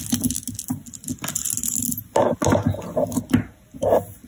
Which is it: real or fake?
real